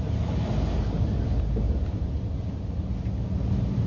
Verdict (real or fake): real